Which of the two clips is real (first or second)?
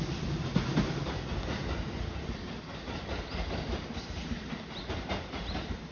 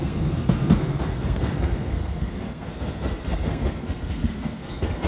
first